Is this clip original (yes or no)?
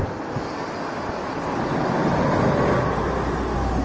yes